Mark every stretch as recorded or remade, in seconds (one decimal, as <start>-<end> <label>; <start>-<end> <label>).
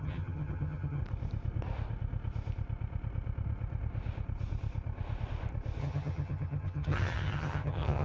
0.0-1.0 remade; 1.0-5.8 recorded; 5.8-8.0 remade